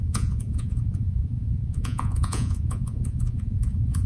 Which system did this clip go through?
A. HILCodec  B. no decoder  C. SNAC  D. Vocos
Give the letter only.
D